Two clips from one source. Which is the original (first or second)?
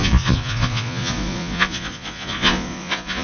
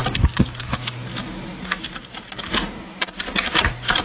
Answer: second